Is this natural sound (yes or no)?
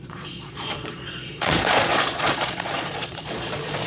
no